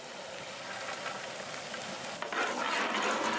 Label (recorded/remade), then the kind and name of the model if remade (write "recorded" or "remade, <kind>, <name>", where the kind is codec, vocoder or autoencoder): recorded